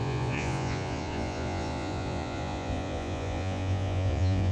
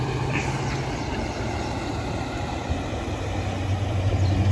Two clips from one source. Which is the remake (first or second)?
first